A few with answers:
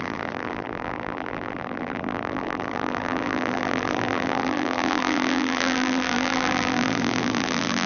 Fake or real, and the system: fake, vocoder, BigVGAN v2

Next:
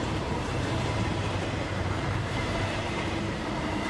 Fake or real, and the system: fake, vocoder, BigVGAN v2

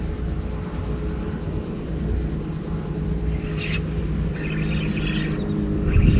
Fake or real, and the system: real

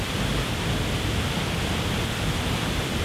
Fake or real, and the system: fake, vocoder, BigVGAN v2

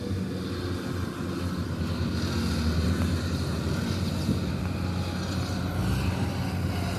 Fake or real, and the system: real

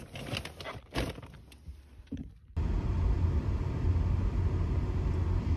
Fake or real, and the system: real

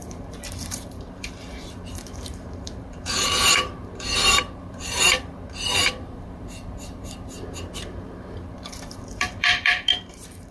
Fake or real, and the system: fake, vocoder, BigVGAN v2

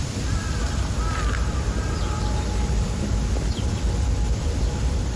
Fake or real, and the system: fake, vocoder, BigVGAN v2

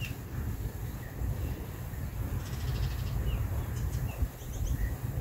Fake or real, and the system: real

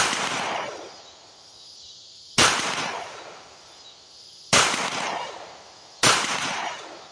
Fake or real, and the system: fake, vocoder, BigVGAN v2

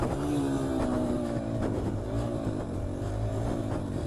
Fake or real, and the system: fake, vocoder, BigVGAN v2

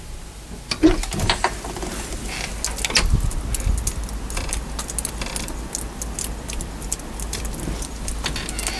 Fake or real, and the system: real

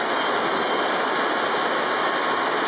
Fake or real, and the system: real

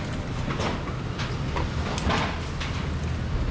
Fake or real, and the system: real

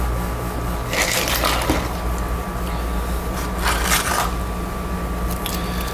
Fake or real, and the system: real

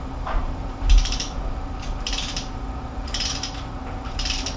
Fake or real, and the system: fake, vocoder, BigVGAN v2